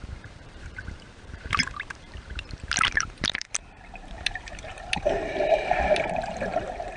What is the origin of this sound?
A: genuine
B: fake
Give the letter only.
B